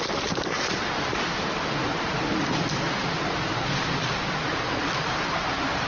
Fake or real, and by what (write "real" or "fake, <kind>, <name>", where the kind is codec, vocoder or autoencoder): real